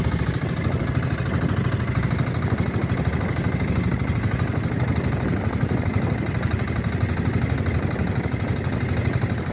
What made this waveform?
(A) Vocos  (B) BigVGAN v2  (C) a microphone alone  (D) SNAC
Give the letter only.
C